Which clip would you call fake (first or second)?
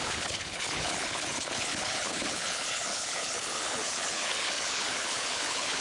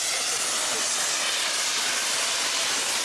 first